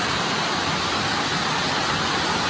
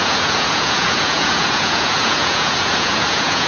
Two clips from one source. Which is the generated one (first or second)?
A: second